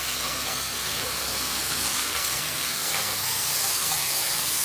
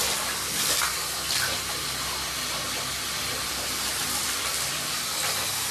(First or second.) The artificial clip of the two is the first